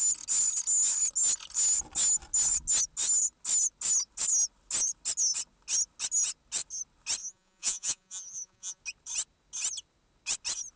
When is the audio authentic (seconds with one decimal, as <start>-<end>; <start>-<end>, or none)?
0.0-7.2; 8.8-10.8